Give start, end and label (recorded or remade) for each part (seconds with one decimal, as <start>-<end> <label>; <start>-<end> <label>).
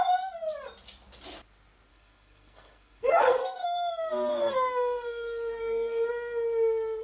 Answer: 0.0-1.9 recorded; 1.9-3.9 remade; 3.9-4.3 recorded; 4.3-6.1 remade; 6.1-7.0 recorded